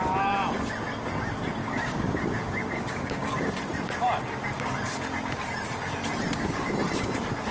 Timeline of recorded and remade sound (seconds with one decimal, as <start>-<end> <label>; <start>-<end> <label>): 0.0-1.6 recorded; 1.6-3.5 remade; 3.5-7.5 recorded